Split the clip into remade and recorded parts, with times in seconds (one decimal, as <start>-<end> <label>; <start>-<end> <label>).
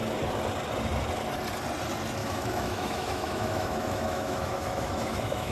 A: 0.0-2.2 recorded; 2.2-5.5 remade